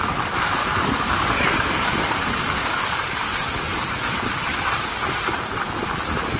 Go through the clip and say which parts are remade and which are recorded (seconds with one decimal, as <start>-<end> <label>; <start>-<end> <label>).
0.0-0.6 recorded; 0.6-3.6 remade; 3.6-4.5 recorded; 4.5-5.2 remade; 5.2-6.4 recorded

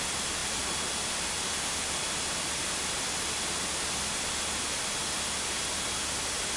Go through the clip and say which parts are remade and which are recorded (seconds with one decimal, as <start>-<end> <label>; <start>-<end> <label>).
0.0-6.6 recorded

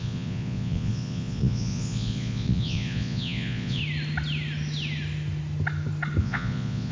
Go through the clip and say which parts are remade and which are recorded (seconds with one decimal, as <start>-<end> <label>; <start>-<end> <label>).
0.0-3.8 remade; 3.8-6.2 recorded; 6.2-6.9 remade

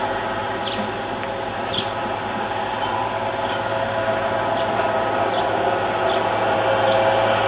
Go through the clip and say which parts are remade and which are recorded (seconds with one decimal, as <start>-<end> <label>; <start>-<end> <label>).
0.0-7.5 recorded

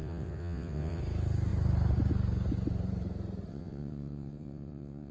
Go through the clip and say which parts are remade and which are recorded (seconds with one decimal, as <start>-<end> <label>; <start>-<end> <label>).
0.0-1.0 remade; 1.0-3.5 recorded; 3.5-5.1 remade

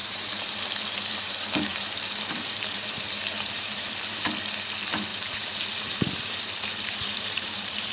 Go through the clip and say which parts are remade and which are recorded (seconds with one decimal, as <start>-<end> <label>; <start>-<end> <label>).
0.0-0.6 remade; 0.6-1.7 recorded; 1.7-4.2 remade; 4.2-5.1 recorded; 5.1-7.9 remade